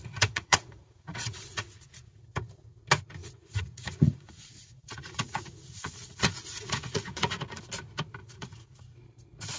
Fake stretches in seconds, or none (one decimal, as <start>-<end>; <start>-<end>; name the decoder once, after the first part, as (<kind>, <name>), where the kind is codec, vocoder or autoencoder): 0.0-2.2 (vocoder, Vocos); 3.2-7.6; 8.2-8.8